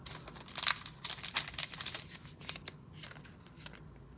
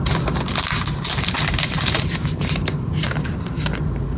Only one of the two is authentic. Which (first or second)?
first